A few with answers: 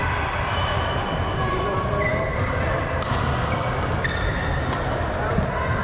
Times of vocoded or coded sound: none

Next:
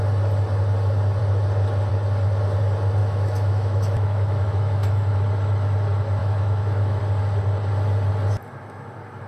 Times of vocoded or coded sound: 3.0-5.2 (autoencoder, DAC-VAE); 6.2-7.0

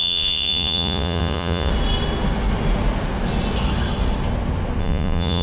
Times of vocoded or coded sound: 0.0-1.7 (vocoder, Vocos); 4.8-5.4

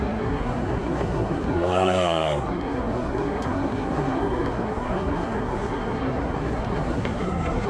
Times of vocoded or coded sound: 0.0-7.7 (codec, SNAC)